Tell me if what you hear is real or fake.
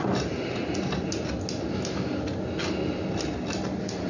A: real